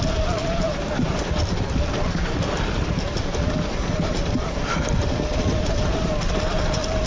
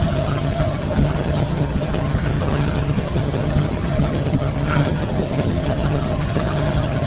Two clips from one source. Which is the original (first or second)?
first